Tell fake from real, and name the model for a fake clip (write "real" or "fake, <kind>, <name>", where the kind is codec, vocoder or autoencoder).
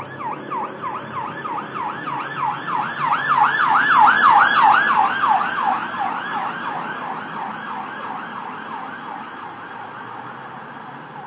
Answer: real